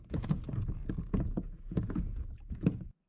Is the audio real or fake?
fake